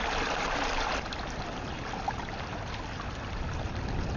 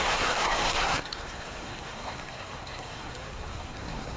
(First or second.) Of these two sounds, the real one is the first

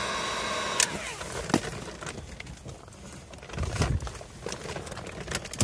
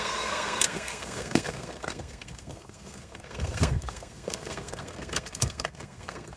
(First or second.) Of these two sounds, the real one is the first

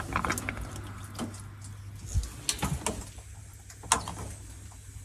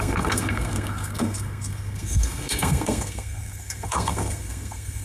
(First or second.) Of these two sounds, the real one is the first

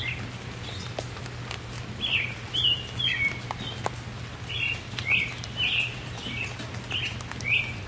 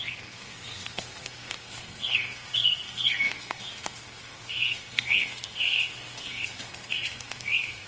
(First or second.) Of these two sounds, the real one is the first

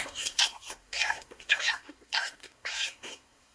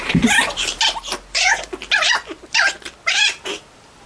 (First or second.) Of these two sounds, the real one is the second